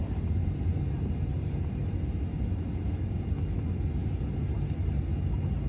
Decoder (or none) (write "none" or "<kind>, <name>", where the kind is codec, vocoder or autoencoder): none